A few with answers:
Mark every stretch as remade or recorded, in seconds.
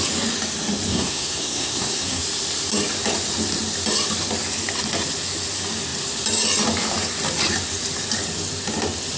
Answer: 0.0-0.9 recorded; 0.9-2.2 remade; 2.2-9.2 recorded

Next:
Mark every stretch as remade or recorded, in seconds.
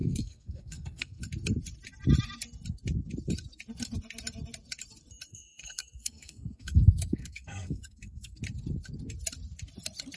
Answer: 0.0-1.2 remade; 1.2-5.3 recorded; 5.3-8.4 remade; 8.4-10.2 recorded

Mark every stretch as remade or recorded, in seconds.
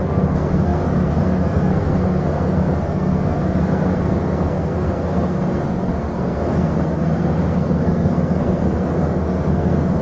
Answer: 0.0-10.0 remade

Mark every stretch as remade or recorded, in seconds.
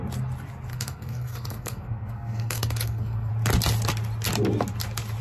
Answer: 0.0-0.7 recorded; 0.7-3.3 remade; 3.3-5.2 recorded